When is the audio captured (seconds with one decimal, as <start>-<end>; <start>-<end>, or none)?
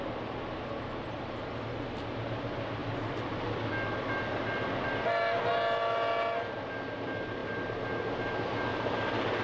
0.0-8.7